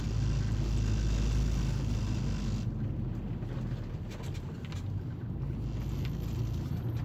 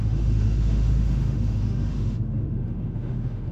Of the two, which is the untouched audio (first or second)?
first